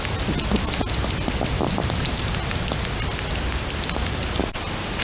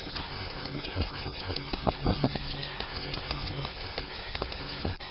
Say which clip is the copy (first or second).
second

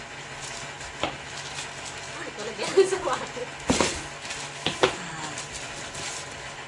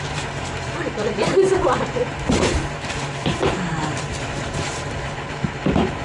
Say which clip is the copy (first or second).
second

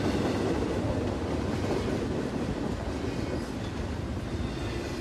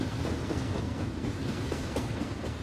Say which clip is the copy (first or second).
second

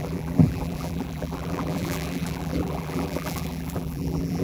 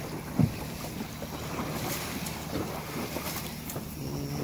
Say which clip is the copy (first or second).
first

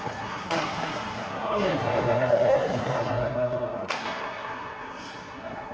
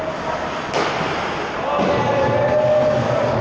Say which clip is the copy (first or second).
first